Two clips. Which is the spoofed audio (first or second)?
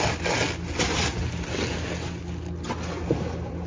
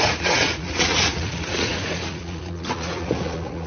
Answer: second